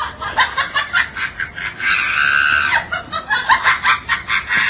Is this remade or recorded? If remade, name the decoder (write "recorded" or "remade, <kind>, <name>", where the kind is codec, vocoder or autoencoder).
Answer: recorded